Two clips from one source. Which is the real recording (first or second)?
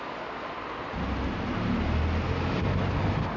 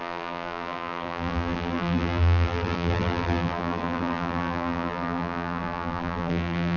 first